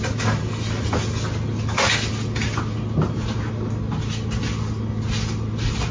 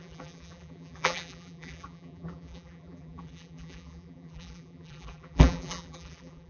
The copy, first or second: second